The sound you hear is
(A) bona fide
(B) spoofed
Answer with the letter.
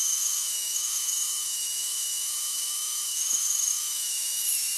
B